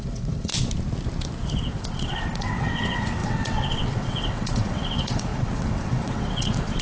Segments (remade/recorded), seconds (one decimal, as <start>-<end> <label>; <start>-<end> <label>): 0.0-0.5 remade; 0.5-1.7 recorded; 1.7-6.8 remade